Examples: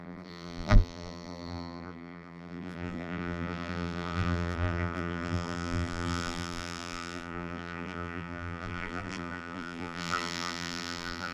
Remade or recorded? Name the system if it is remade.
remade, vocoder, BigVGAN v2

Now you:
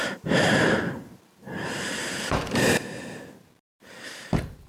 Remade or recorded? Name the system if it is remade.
remade, vocoder, BigVGAN v2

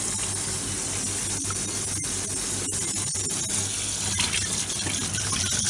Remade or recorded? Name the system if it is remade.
recorded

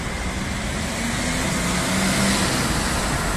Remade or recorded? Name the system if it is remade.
recorded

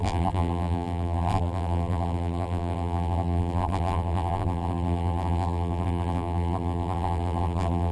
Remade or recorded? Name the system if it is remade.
remade, vocoder, BigVGAN v2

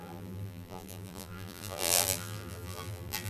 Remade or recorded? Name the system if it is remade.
remade, vocoder, BigVGAN v2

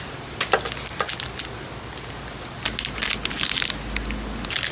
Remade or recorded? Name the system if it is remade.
recorded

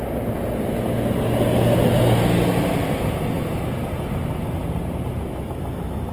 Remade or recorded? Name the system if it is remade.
recorded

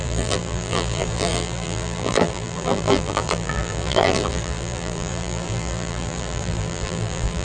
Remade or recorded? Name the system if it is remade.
remade, vocoder, BigVGAN v2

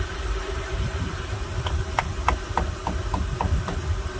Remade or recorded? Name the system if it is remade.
remade, vocoder, BigVGAN v2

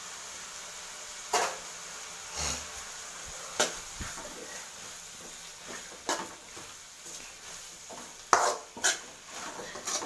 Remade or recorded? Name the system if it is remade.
recorded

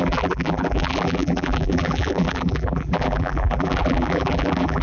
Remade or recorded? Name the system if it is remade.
remade, vocoder, BigVGAN v2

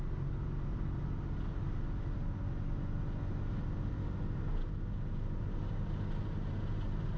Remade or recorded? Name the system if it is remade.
recorded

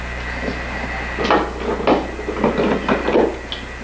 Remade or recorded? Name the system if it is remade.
recorded